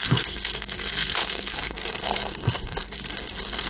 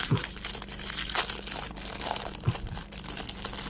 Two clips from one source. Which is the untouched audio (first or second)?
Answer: second